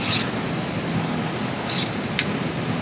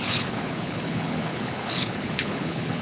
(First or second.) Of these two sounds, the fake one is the second